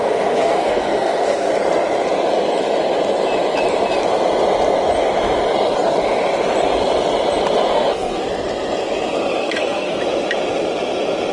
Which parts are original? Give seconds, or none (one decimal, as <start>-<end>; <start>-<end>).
1.5-7.7; 8.2-9.4; 10.0-11.3